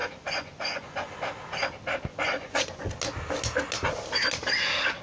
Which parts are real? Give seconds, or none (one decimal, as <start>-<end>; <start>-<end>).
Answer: 1.2-2.1; 2.9-5.0